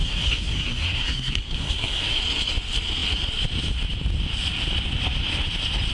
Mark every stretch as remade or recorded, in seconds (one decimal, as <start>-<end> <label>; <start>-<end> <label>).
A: 0.0-2.2 remade; 2.2-5.9 recorded